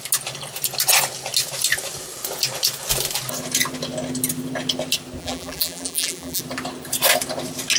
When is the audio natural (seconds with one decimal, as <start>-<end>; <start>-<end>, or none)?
0.0-5.2; 6.4-7.8